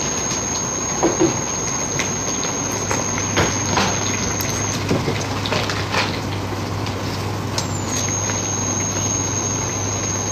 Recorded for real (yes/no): yes